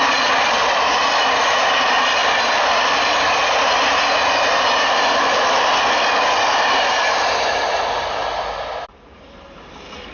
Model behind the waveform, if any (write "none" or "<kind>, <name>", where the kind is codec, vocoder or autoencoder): none